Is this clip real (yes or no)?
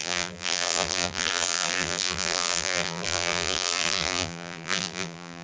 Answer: no